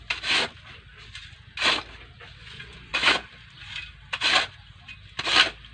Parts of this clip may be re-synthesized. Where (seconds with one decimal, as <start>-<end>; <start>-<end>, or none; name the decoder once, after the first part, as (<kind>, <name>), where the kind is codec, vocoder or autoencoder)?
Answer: 2.4-3.3 (vocoder, Vocos)